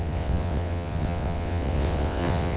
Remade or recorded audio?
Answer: remade